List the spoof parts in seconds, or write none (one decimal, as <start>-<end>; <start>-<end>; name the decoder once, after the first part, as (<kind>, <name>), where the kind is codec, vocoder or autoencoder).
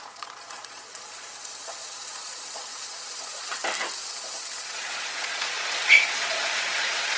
0.0-3.6 (vocoder, Vocos); 4.1-7.2